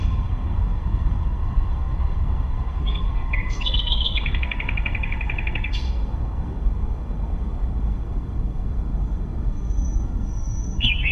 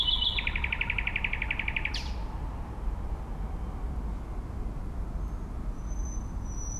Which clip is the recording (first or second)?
second